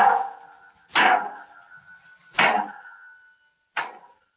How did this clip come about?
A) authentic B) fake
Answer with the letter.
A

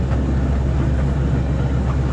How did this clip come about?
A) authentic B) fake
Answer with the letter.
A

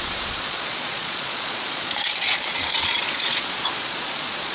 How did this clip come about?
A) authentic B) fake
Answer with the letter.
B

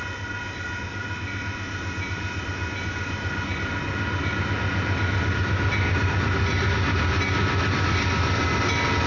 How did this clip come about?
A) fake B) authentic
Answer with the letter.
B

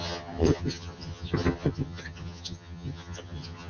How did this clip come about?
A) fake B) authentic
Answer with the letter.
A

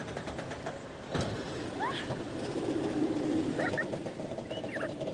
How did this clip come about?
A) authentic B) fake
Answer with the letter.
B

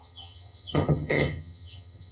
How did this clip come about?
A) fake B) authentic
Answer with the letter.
A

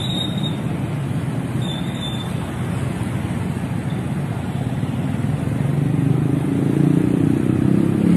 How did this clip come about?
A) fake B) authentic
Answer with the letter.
B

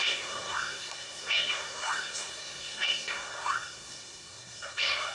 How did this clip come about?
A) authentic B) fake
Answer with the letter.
B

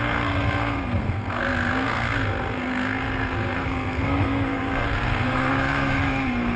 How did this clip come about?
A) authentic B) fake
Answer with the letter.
B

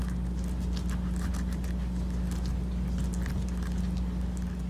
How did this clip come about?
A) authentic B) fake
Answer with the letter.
A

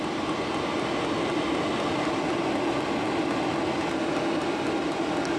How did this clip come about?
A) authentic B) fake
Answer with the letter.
A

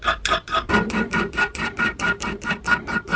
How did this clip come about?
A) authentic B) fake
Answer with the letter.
B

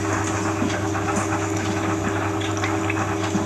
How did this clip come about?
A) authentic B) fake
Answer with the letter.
A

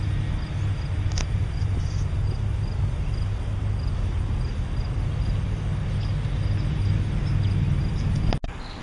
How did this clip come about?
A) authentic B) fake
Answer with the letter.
A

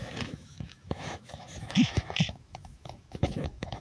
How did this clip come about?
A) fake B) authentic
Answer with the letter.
A